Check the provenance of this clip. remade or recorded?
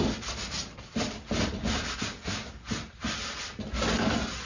recorded